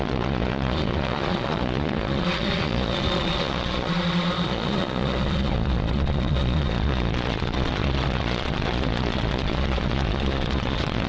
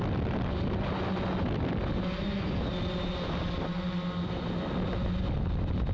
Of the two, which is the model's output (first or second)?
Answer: first